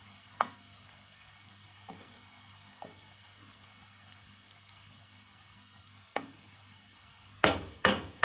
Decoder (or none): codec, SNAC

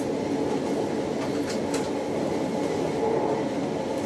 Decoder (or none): none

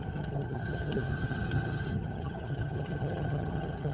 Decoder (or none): vocoder, HiFi-GAN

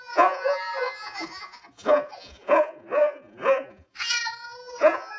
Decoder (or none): vocoder, Vocos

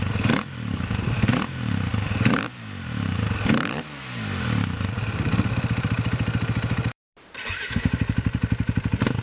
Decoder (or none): vocoder, BigVGAN v2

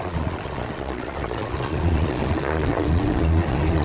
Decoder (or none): vocoder, Vocos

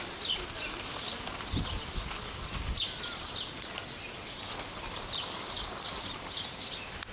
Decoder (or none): none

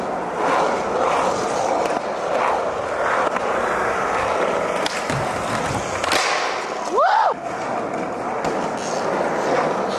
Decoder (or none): none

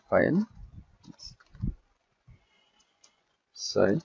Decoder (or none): vocoder, Vocos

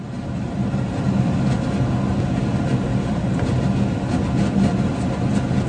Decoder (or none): none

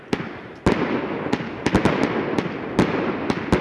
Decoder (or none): none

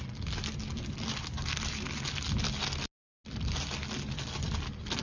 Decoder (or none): none